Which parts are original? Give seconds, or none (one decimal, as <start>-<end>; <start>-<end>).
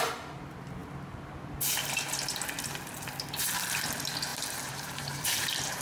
0.0-4.3